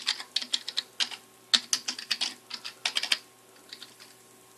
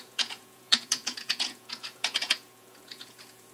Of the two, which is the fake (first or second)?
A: second